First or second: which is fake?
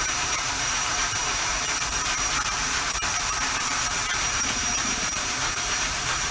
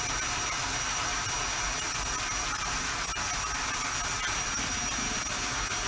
first